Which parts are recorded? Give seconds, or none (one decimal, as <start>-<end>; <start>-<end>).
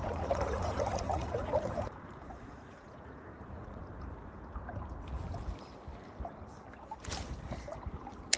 3.8-8.4